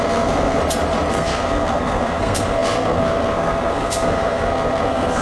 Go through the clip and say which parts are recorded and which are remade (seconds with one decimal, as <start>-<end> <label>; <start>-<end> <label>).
0.0-0.6 remade; 0.6-1.1 recorded; 1.1-5.2 remade